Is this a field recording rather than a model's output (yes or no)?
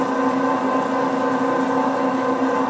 yes